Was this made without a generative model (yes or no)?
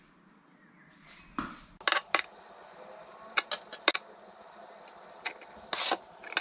yes